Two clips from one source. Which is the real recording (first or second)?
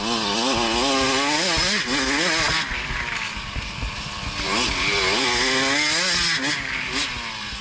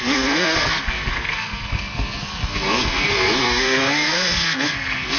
first